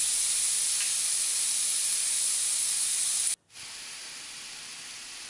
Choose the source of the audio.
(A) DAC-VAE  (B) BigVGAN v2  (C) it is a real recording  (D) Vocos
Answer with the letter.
C